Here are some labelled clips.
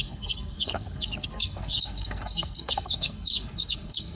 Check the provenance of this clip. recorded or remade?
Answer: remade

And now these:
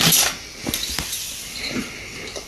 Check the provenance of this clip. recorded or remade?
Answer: remade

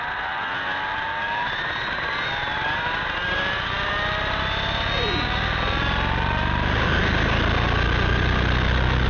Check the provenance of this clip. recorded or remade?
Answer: recorded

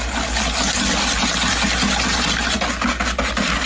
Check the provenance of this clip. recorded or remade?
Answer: recorded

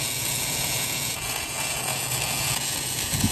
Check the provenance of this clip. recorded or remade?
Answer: remade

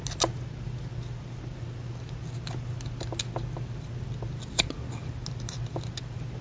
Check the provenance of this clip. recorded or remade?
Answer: recorded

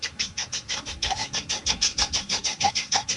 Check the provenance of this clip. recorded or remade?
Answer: remade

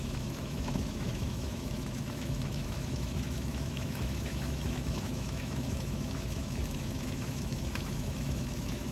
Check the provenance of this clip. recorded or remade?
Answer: remade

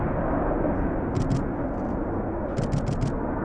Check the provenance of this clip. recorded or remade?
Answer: recorded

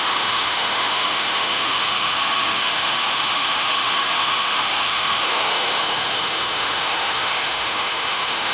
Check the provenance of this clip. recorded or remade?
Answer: remade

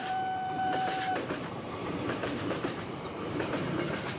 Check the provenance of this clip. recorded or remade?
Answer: remade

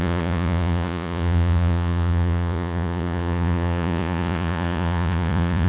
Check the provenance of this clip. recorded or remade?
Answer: remade